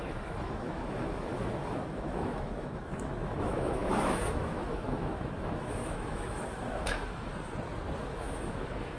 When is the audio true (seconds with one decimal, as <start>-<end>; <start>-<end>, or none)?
7.3-8.0